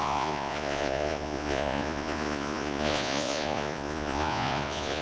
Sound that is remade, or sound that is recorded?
remade